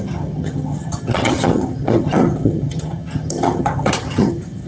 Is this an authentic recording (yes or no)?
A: no